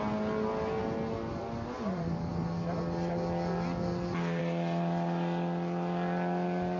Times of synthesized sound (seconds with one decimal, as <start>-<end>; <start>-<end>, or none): none

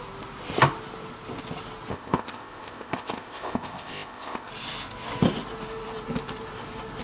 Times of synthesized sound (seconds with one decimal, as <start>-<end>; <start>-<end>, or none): 1.9-4.5

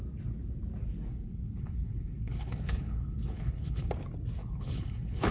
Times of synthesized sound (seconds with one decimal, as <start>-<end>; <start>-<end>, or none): 1.1-3.9; 4.4-5.3

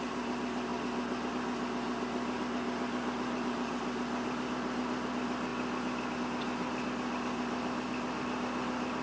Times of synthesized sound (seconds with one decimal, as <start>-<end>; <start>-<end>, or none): none

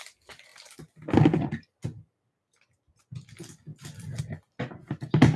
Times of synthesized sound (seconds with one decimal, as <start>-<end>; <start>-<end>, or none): none

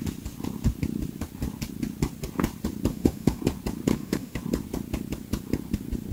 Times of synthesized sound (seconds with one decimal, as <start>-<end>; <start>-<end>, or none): 2.9-3.4; 3.9-4.4

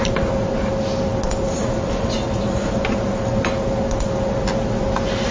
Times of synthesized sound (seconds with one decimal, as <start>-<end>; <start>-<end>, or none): none

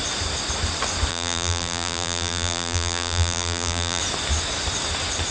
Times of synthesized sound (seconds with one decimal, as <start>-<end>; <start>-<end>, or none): 1.1-4.0